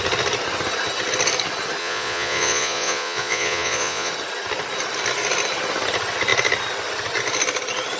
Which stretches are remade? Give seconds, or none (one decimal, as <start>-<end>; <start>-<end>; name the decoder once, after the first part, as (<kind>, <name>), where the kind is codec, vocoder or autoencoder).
1.8-4.1 (vocoder, Vocos)